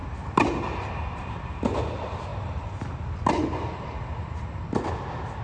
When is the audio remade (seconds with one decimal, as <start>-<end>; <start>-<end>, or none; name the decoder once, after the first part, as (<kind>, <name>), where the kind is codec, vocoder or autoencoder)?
none

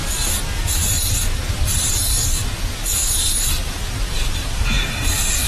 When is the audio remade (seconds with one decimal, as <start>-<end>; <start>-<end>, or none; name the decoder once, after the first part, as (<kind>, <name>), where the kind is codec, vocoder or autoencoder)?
none

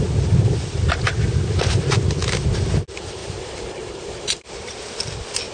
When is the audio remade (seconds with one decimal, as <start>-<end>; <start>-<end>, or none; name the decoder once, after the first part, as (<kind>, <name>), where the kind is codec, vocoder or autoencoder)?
3.2-4.5 (vocoder, BigVGAN v2)

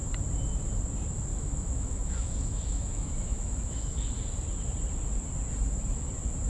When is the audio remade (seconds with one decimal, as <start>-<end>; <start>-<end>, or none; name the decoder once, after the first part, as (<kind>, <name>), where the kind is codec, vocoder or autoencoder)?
1.3-4.1 (autoencoder, DAC-VAE)

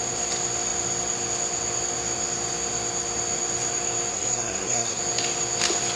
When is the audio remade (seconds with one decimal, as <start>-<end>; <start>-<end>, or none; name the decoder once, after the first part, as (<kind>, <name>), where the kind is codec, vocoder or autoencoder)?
4.1-5.0 (codec, SNAC)

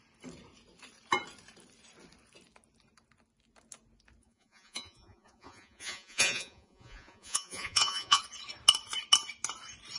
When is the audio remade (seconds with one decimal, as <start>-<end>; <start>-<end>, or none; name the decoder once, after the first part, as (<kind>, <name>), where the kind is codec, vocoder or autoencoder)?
4.2-8.2 (vocoder, Vocos)

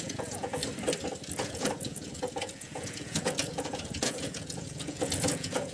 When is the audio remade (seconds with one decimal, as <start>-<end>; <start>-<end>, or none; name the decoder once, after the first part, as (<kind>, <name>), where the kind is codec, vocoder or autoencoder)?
0.0-0.6 (vocoder, Vocos); 1.4-5.7